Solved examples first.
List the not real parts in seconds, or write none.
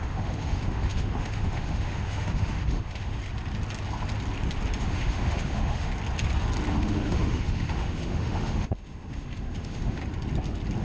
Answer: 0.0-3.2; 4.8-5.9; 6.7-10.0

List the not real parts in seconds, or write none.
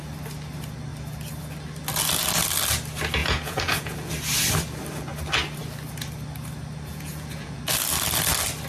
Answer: 3.2-4.1; 6.9-7.6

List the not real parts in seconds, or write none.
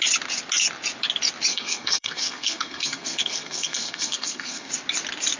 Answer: 1.5-4.7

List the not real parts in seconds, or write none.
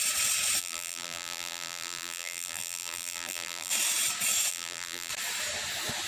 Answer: 0.6-3.7; 4.5-5.1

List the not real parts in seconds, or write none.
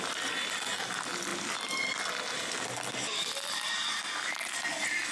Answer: none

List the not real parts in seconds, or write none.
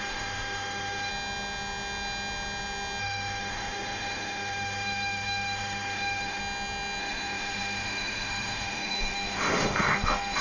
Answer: 0.0-1.1; 3.0-6.4; 7.0-10.4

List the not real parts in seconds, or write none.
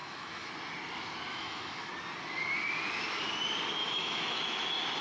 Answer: 0.0-0.5; 1.3-1.9; 3.8-4.4